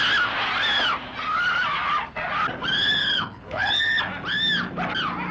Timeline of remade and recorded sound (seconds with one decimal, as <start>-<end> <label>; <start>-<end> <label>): 0.0-3.0 recorded; 3.0-4.0 remade; 4.0-5.3 recorded